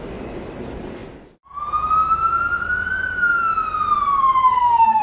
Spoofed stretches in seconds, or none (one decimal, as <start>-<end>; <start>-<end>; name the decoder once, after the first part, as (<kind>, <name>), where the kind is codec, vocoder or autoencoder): 4.4-5.0 (codec, SNAC)